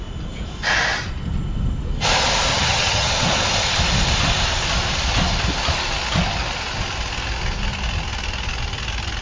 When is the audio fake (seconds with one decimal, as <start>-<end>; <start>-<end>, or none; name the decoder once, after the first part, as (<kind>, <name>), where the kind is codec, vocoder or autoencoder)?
2.5-3.1 (vocoder, HiFi-GAN)